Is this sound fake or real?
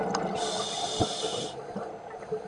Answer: real